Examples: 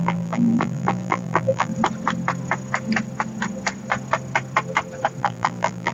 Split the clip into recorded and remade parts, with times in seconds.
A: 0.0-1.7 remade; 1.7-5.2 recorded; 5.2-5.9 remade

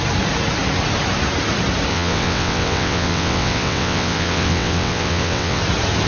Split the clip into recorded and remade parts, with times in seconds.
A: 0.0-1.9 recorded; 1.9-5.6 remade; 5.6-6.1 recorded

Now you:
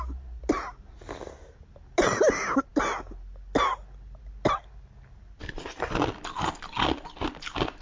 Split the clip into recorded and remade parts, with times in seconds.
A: 0.0-7.8 recorded

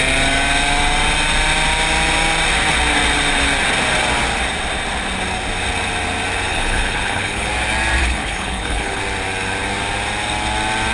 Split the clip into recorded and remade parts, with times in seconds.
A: 0.0-6.5 recorded; 6.5-7.5 remade; 7.5-8.0 recorded; 8.0-9.0 remade; 9.0-10.9 recorded

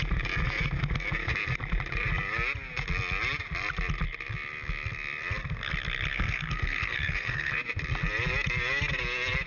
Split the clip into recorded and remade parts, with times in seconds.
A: 0.0-6.1 recorded; 6.1-7.5 remade; 7.5-9.5 recorded